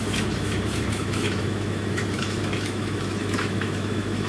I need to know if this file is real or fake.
fake